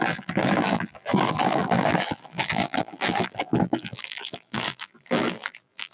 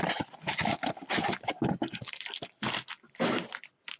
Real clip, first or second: second